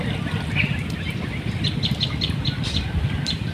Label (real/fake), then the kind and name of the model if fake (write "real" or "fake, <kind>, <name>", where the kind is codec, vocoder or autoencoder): real